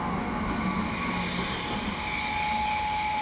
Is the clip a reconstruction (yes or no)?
no